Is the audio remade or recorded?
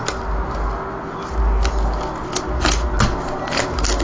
recorded